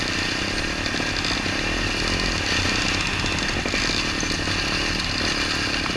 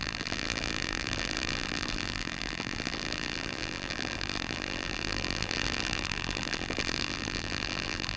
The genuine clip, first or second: first